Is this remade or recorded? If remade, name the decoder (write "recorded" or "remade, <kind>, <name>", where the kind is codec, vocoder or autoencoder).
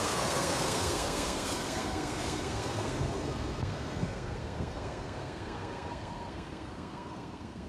remade, codec, SNAC